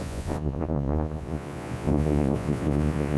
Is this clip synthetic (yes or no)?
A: yes